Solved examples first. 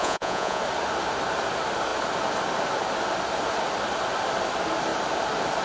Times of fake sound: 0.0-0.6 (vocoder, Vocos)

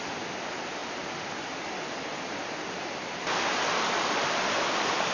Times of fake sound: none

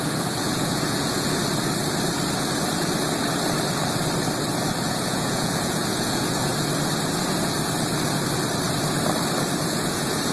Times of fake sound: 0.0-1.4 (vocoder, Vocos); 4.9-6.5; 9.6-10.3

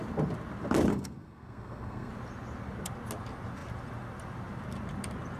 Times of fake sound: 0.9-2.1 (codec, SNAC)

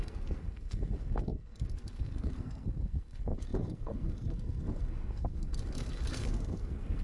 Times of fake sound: 0.0-7.0 (codec, SNAC)

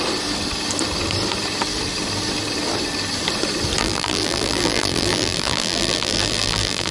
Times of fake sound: 3.8-6.9 (vocoder, BigVGAN v2)

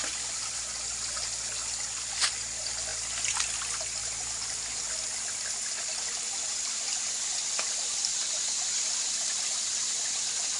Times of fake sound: none

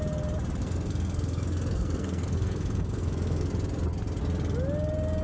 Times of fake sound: 0.6-3.5 (codec, SNAC)